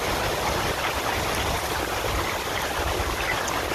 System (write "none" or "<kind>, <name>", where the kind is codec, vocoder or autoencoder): none